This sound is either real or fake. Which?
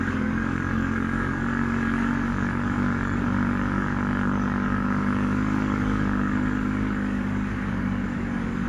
fake